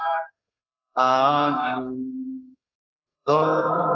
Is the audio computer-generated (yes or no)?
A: yes